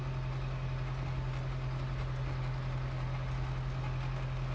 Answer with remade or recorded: recorded